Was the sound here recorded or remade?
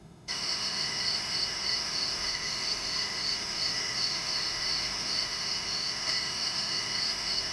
remade